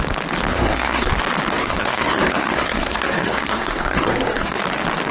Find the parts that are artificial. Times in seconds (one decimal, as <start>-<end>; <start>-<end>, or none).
0.5-1.1; 1.6-4.6